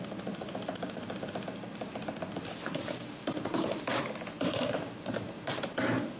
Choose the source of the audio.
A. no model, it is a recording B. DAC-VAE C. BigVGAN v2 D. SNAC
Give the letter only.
C